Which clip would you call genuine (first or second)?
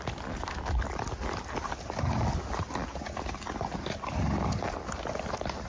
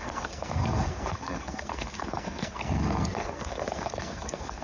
first